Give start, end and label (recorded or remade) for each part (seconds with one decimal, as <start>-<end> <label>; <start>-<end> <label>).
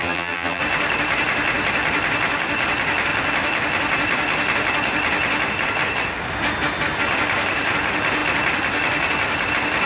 0.0-0.6 remade; 0.6-9.9 recorded